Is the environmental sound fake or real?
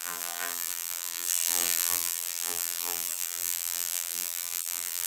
fake